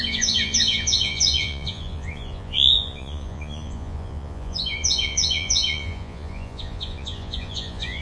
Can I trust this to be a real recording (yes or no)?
no